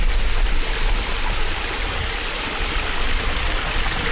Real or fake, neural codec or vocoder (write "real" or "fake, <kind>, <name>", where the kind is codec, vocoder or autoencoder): real